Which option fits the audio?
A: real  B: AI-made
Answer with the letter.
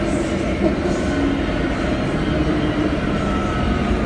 A